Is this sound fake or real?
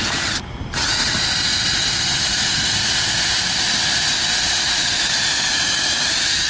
real